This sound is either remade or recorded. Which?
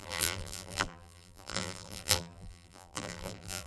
remade